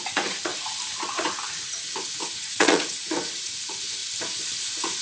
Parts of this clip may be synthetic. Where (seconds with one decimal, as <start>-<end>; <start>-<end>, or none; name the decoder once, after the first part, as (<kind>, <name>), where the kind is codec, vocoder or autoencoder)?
0.0-0.5 (vocoder, Vocos); 1.1-4.0; 4.6-5.0